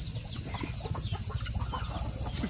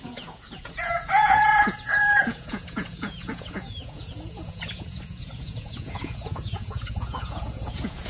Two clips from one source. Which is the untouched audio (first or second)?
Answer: first